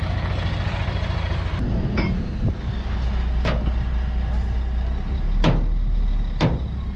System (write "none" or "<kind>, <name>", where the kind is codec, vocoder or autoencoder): none